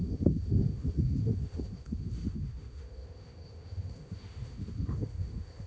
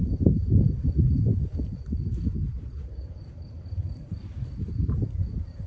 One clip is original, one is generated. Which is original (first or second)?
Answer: second